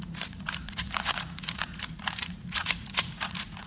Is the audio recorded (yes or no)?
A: no